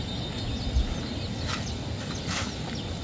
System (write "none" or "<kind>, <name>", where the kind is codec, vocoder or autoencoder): none